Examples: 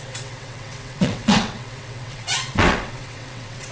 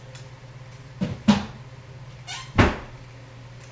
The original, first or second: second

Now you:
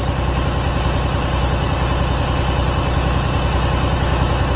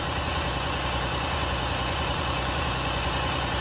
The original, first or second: first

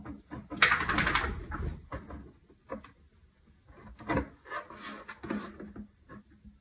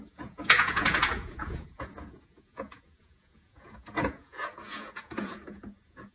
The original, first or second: first